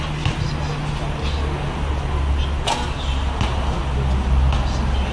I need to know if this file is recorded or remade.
recorded